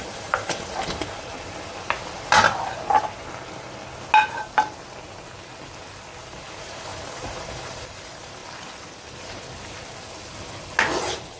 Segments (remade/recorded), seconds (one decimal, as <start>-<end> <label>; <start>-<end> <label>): 0.0-1.3 remade; 1.3-6.2 recorded; 6.2-8.4 remade; 8.4-11.0 recorded; 11.0-11.4 remade